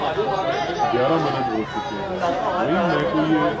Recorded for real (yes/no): yes